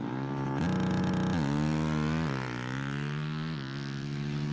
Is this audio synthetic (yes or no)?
no